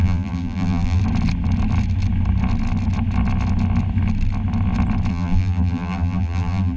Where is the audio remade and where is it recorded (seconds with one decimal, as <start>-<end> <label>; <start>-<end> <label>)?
0.0-1.0 remade; 1.0-5.1 recorded; 5.1-6.8 remade